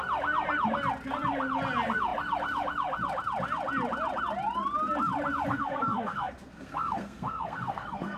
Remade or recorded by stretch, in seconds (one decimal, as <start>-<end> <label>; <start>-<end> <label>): 0.0-5.5 recorded; 5.5-8.2 remade